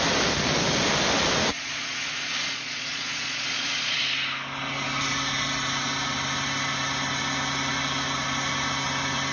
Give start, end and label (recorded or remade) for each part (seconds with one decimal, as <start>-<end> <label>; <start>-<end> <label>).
0.0-1.5 recorded; 1.5-4.0 remade; 4.0-9.3 recorded